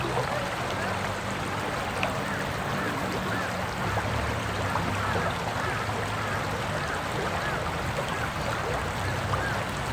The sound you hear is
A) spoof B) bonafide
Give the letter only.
B